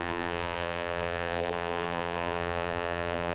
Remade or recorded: remade